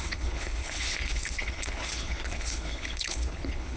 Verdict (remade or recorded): remade